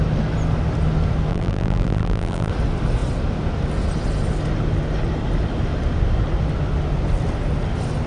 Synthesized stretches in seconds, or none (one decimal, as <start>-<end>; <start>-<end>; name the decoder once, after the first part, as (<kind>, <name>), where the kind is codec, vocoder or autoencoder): 1.3-2.5 (vocoder, BigVGAN v2)